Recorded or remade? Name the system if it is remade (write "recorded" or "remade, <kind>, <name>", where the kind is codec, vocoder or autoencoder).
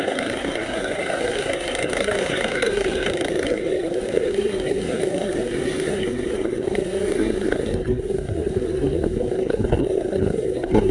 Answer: remade, codec, SNAC